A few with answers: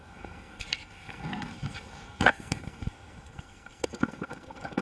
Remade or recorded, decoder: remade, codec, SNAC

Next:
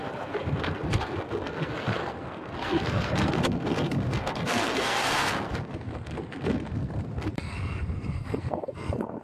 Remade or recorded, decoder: remade, codec, SNAC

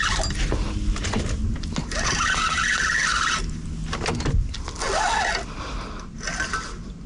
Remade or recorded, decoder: recorded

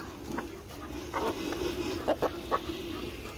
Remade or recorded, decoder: recorded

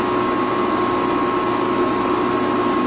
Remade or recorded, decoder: recorded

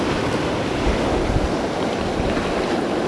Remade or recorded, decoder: recorded